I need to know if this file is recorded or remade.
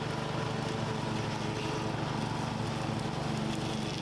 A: recorded